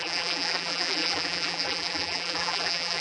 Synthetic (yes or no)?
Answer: yes